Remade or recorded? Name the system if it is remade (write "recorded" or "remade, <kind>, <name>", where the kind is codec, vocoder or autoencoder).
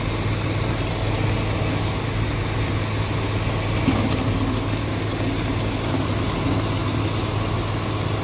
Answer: recorded